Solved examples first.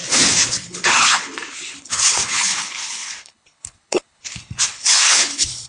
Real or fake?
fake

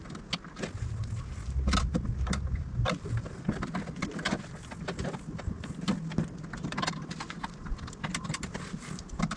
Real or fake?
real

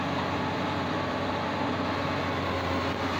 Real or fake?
real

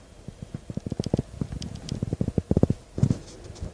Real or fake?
real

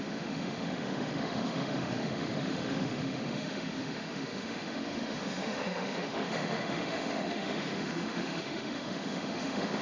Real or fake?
fake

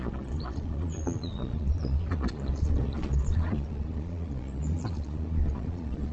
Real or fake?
fake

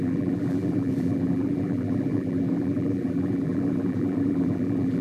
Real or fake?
fake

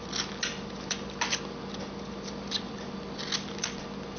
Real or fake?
real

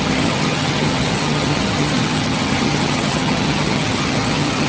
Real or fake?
fake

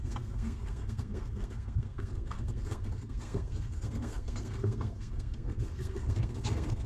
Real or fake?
fake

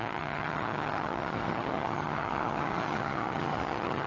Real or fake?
fake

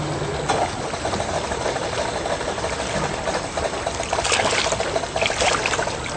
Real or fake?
real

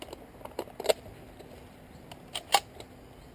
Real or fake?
real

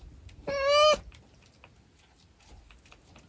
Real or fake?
real